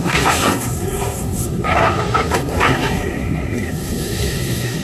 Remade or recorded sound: remade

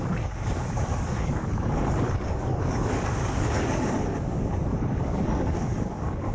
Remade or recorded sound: remade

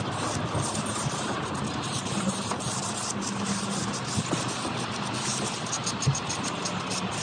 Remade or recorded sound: recorded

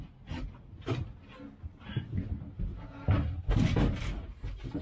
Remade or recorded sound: recorded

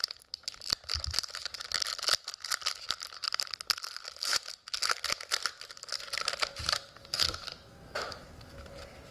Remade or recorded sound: recorded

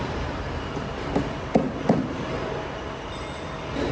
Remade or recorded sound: recorded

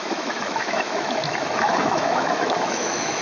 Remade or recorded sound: remade